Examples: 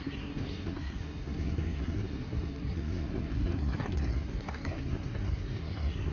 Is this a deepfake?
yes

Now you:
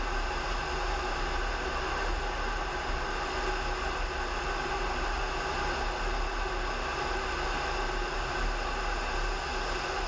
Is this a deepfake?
no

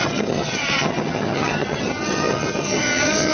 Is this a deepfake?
yes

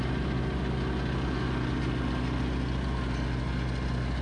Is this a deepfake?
no